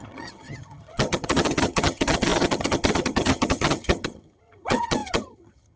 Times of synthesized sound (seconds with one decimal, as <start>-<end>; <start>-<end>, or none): 0.0-5.8